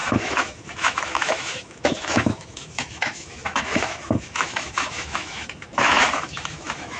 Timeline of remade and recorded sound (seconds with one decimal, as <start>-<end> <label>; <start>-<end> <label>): 0.0-7.0 remade